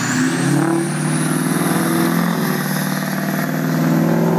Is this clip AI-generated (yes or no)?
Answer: no